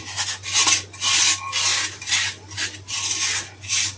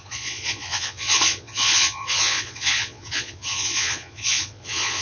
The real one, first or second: first